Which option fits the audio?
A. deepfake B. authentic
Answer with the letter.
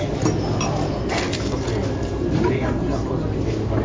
B